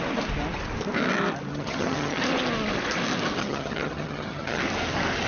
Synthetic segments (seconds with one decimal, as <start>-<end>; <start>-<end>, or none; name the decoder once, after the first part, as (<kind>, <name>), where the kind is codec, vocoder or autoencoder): 1.5-2.2 (vocoder, HiFi-GAN); 3.4-4.6